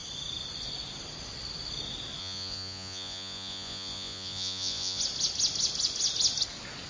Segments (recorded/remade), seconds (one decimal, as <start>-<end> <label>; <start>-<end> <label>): 0.0-2.2 recorded; 2.2-5.0 remade; 5.0-6.9 recorded